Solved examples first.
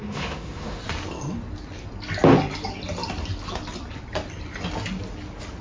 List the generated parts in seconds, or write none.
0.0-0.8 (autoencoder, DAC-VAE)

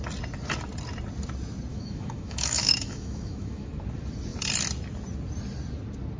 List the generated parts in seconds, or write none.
1.7-3.7 (autoencoder, DAC-VAE)

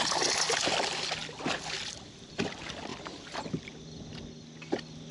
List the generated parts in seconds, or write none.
none